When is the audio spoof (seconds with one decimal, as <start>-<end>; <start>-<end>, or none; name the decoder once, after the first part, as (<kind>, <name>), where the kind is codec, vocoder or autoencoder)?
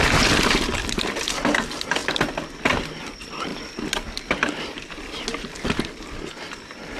none